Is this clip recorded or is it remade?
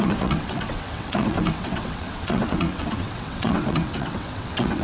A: remade